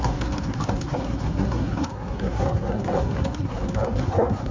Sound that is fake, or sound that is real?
fake